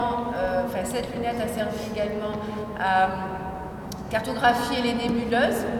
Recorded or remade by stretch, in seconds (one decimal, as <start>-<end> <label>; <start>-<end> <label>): 0.0-2.6 recorded; 2.6-4.2 remade; 4.2-5.8 recorded